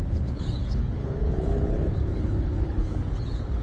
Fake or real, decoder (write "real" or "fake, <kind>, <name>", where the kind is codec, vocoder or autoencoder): fake, codec, HILCodec